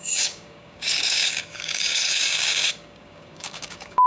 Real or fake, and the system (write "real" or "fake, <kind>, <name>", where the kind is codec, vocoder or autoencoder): fake, codec, DAC